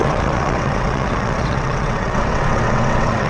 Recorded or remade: remade